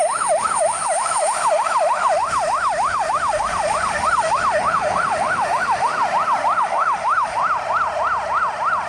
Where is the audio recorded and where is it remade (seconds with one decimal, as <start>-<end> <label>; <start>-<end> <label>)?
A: 0.0-5.9 remade; 5.9-6.6 recorded; 6.6-7.4 remade; 7.4-8.9 recorded